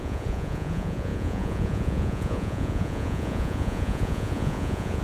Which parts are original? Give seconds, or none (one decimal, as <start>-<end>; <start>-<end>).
none